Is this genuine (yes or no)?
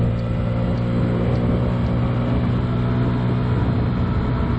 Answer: yes